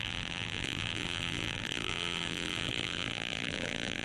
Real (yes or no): no